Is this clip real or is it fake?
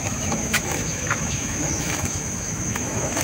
fake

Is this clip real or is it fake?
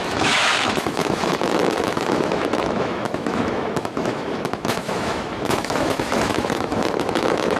fake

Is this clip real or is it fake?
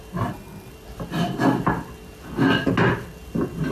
real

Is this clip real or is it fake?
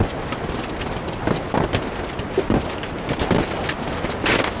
real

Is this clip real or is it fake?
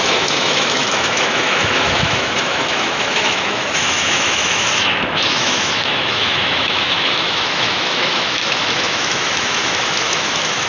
fake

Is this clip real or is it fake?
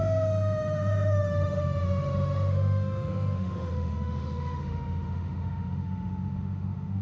fake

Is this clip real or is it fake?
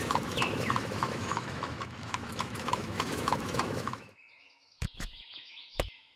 fake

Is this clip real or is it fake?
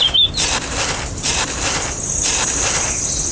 real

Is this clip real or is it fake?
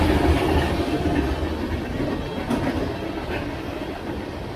real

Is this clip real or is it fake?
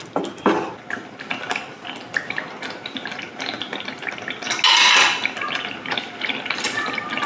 real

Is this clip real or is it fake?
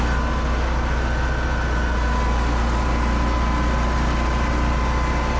real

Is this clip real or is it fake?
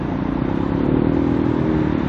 real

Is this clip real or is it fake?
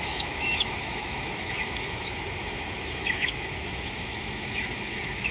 fake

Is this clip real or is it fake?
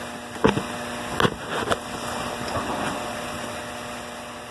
real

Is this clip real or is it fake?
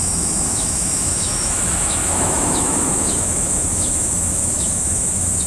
fake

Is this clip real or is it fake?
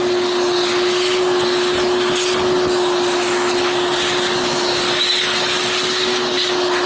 real